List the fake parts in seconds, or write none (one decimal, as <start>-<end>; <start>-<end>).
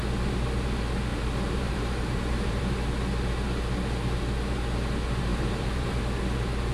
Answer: 1.1-2.6; 5.3-6.0